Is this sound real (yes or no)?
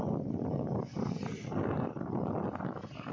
yes